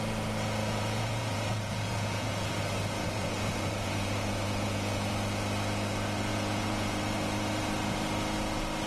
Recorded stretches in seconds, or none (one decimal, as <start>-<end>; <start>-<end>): 0.0-0.6; 2.5-3.0; 5.1-6.3; 7.0-8.9